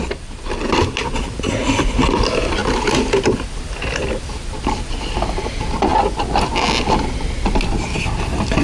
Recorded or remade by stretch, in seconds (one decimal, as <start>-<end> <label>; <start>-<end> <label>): 0.0-8.6 recorded